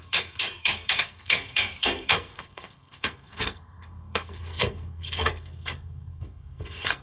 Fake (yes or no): yes